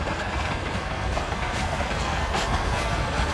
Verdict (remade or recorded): remade